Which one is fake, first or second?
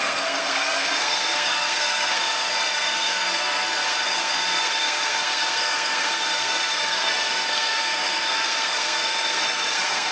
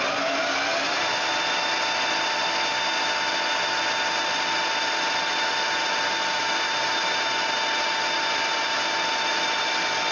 first